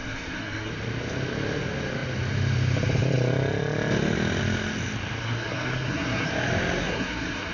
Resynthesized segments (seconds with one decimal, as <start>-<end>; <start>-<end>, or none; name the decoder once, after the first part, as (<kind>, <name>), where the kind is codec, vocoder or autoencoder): 0.0-0.7 (codec, SNAC); 5.2-6.3; 6.8-7.5